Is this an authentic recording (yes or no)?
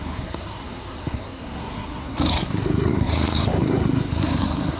no